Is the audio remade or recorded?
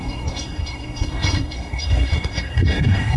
remade